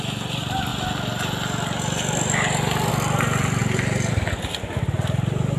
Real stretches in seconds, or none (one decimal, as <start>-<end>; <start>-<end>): 0.0-5.6